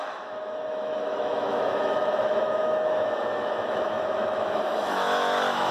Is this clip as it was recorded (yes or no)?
no